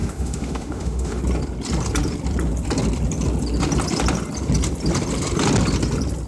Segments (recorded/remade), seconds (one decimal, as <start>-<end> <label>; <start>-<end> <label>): 0.0-1.2 remade; 1.2-6.3 recorded